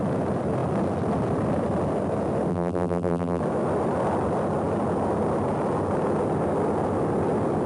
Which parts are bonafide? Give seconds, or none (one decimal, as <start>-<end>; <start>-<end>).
0.0-2.5; 3.4-7.7